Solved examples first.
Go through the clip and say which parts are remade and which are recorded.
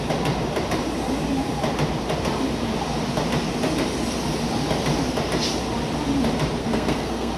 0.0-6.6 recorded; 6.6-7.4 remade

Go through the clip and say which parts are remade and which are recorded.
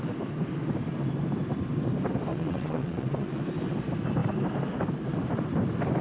0.0-2.3 recorded; 2.3-3.4 remade; 3.4-6.0 recorded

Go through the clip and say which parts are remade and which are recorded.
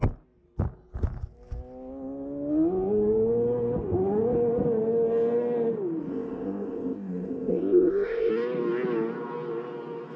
0.0-6.1 recorded; 6.1-8.3 remade; 8.3-10.2 recorded